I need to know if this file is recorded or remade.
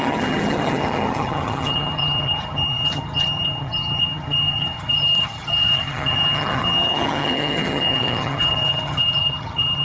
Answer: remade